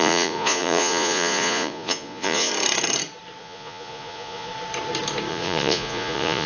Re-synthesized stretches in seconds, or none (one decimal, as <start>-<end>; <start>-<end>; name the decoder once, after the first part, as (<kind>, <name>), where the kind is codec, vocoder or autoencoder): 0.0-2.5 (vocoder, Vocos); 3.4-4.5; 5.3-6.5